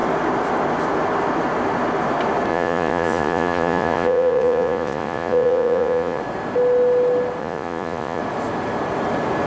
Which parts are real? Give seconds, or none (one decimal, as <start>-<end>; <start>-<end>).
0.0-2.5; 6.2-7.4; 8.2-9.5